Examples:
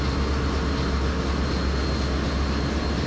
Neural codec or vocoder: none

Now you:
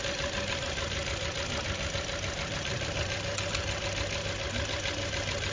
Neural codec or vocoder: none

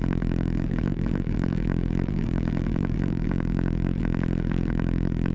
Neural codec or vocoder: vocoder, BigVGAN v2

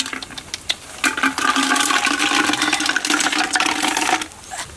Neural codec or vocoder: none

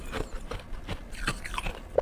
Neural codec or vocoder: none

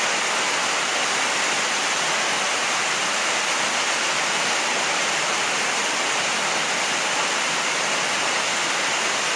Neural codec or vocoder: vocoder, BigVGAN v2